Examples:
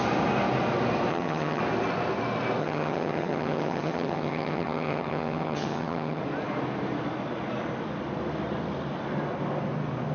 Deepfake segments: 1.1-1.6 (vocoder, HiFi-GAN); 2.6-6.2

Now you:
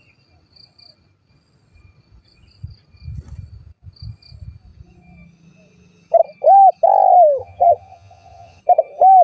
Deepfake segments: 7.4-8.6 (vocoder, HiFi-GAN)

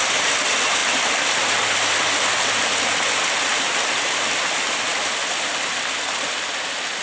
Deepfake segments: none

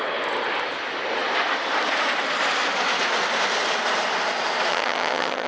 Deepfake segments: 4.7-5.5 (vocoder, HiFi-GAN)

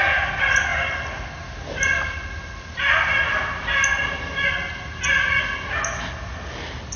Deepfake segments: none

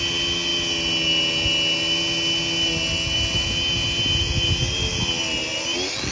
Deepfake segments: none

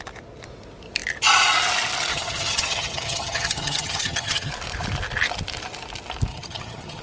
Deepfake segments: 2.1-4.5 (vocoder, HiFi-GAN); 6.3-7.0